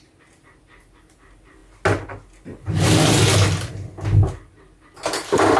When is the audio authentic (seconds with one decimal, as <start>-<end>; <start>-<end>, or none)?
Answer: 0.0-5.6